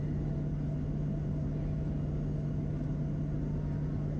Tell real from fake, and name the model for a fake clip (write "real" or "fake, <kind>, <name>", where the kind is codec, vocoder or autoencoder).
real